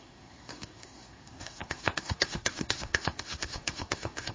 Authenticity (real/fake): fake